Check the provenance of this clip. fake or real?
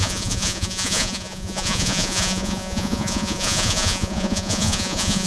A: fake